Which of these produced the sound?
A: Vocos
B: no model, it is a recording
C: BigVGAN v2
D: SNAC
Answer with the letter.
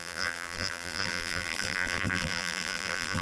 C